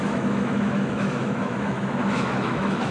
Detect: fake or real fake